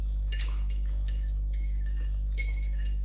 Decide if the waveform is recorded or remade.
remade